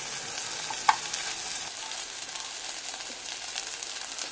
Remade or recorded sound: recorded